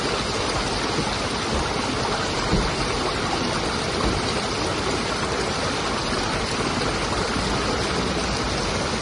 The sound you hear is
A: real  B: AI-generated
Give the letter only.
A